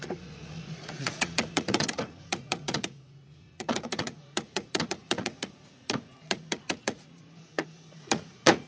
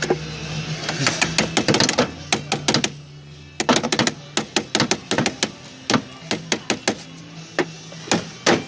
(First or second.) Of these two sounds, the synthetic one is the first